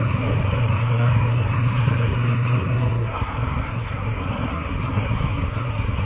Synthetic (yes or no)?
yes